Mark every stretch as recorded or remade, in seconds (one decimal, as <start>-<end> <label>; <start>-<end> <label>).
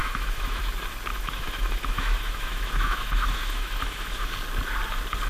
0.0-0.6 remade; 0.6-1.1 recorded; 1.1-4.3 remade; 4.3-5.3 recorded